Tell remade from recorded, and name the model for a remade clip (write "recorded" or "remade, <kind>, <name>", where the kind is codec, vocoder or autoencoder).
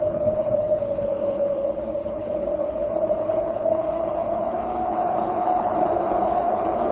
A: remade, codec, HILCodec